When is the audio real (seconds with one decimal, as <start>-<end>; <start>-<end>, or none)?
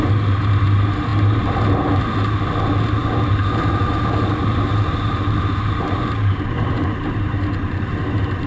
none